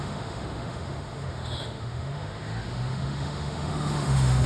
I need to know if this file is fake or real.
fake